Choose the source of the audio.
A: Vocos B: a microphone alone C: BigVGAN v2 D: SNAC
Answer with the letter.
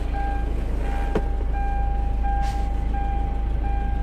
B